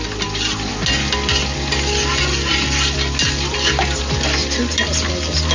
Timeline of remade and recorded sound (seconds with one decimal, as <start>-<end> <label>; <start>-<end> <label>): 0.0-5.5 recorded